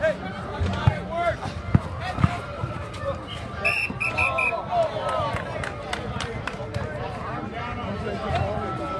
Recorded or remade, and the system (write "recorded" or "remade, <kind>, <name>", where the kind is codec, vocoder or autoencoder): recorded